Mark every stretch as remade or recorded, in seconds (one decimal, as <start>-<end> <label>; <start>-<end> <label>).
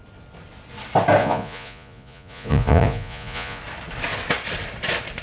0.0-1.2 recorded; 1.2-3.6 remade; 3.6-5.2 recorded